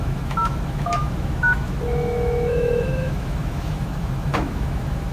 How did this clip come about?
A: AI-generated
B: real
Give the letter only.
A